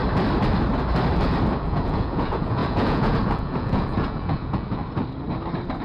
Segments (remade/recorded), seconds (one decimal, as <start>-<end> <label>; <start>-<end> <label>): 0.0-1.6 recorded; 1.6-4.8 remade; 4.8-5.8 recorded